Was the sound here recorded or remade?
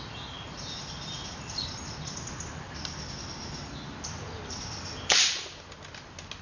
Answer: recorded